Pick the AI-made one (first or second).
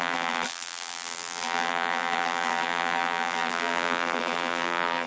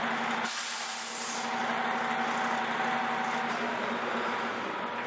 first